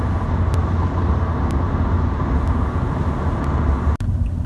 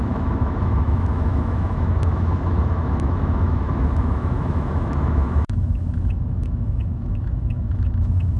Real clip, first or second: first